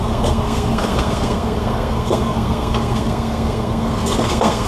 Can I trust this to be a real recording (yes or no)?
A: no